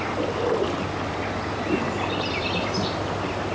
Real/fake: real